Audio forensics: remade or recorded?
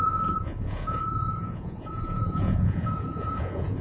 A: remade